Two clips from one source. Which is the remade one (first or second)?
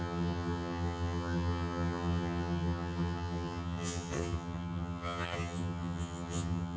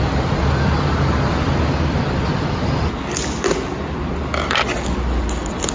first